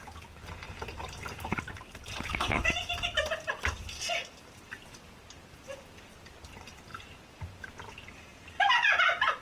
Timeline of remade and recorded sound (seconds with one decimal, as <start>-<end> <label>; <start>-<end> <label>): 0.0-9.4 recorded